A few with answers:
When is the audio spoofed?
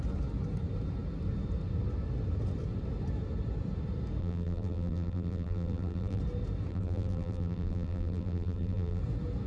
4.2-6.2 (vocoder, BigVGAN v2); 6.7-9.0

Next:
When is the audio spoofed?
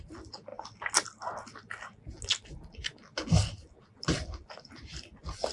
none